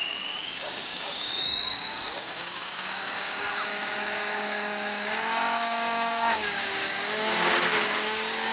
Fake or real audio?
fake